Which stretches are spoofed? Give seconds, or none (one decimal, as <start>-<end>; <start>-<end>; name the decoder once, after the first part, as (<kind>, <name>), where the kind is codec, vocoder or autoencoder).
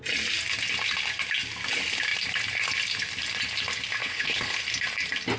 4.0-4.6 (codec, HILCodec)